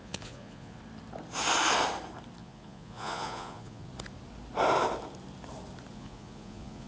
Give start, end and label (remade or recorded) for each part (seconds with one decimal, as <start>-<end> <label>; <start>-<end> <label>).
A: 0.0-0.8 remade; 0.8-2.4 recorded; 2.4-3.9 remade; 3.9-5.9 recorded; 5.9-6.9 remade